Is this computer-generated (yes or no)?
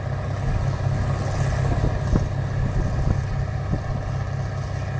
no